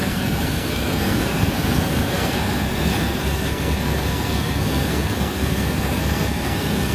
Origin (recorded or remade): remade